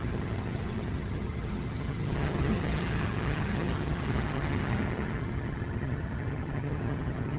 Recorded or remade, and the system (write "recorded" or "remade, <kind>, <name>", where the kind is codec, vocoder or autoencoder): remade, vocoder, HiFi-GAN